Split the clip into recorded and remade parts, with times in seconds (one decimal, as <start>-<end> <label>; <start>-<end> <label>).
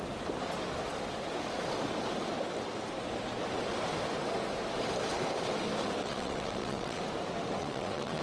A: 0.0-6.0 recorded; 6.0-7.0 remade; 7.0-7.6 recorded; 7.6-8.2 remade